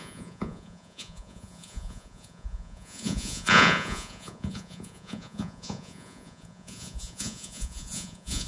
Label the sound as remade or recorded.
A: remade